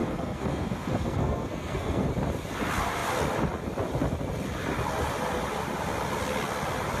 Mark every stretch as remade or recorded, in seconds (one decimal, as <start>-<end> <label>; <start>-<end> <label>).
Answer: 0.0-2.1 remade; 2.1-7.0 recorded